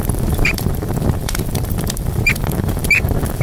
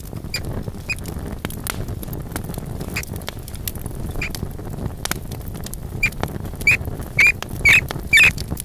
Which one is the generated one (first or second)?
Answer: first